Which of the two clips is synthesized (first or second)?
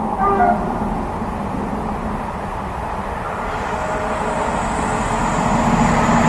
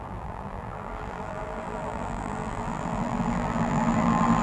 second